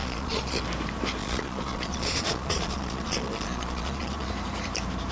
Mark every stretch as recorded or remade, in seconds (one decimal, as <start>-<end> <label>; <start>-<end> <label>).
0.0-0.6 remade; 0.6-1.2 recorded; 1.2-4.3 remade; 4.3-5.1 recorded